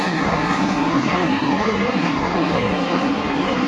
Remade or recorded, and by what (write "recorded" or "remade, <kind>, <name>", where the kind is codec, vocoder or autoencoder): remade, codec, SNAC